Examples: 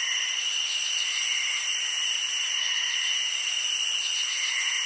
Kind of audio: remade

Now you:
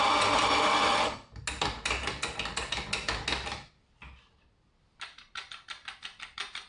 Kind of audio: recorded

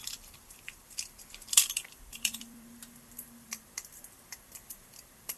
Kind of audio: remade